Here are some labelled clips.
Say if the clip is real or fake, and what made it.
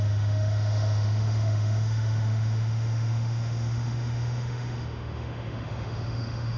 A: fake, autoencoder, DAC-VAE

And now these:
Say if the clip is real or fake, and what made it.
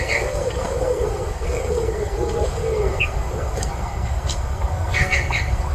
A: fake, codec, SNAC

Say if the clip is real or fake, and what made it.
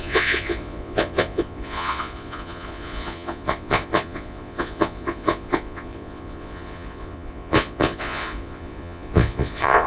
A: fake, vocoder, Vocos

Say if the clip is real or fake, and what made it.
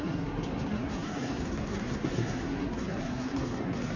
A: fake, codec, SNAC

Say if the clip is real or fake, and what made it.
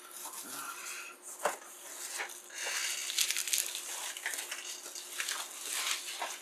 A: real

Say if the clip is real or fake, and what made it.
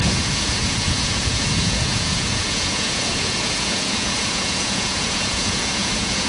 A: fake, vocoder, Vocos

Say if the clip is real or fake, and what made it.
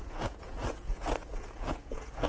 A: fake, vocoder, Vocos